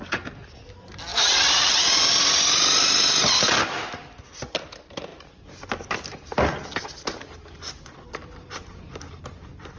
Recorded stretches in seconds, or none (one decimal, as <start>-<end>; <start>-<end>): 0.0-9.8